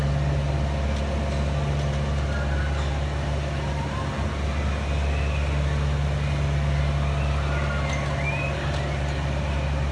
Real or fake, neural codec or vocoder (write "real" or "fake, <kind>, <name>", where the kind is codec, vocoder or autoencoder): real